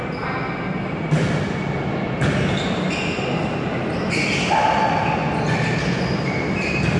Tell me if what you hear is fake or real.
real